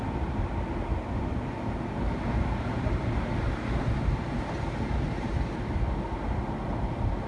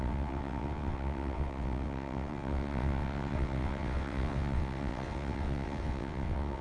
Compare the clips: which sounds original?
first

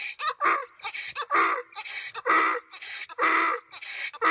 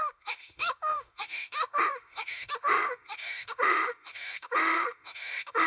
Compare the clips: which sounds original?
first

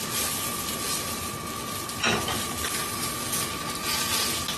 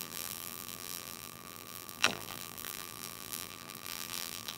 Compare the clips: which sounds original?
first